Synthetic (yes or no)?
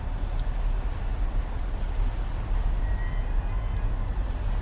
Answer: no